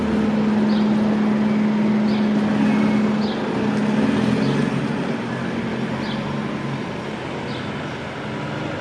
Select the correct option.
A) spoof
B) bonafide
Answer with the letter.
B